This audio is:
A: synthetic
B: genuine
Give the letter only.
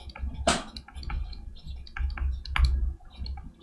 B